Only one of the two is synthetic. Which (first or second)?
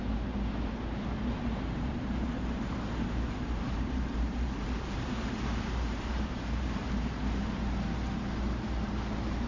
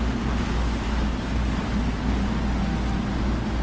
first